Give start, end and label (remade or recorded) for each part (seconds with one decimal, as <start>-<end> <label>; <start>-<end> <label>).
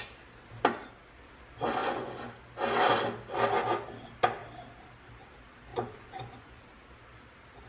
0.0-1.8 recorded; 1.8-2.3 remade; 2.3-5.7 recorded; 5.7-6.6 remade; 6.6-7.7 recorded